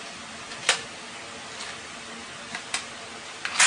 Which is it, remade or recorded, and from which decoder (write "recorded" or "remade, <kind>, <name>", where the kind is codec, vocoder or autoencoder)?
recorded